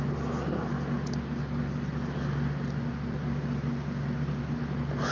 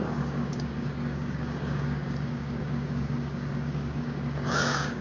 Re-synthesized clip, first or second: second